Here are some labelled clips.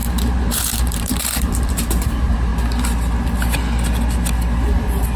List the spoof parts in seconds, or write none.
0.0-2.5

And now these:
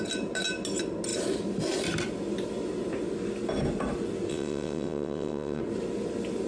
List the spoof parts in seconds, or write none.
4.3-5.6

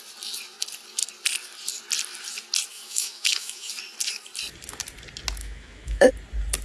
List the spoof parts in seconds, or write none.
2.7-3.7; 5.4-6.1

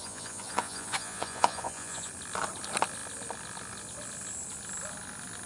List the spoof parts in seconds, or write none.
0.0-2.1

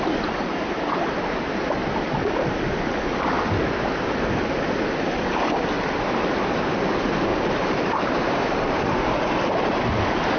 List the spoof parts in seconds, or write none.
7.3-9.2

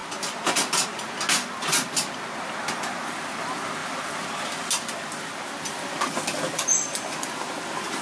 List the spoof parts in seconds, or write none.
none

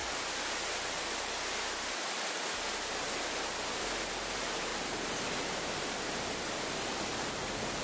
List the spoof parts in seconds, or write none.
4.7-7.0